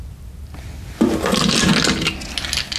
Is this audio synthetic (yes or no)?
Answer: no